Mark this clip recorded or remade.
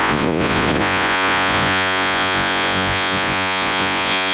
remade